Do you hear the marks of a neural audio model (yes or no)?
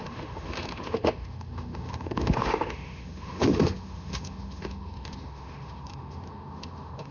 yes